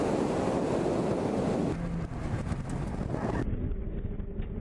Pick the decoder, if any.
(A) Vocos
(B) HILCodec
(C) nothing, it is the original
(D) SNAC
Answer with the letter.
C